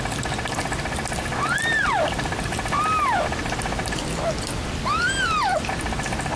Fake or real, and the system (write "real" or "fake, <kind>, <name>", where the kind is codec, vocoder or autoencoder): real